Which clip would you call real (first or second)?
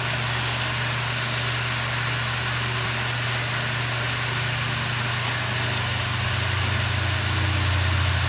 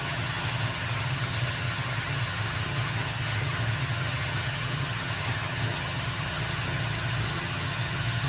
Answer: first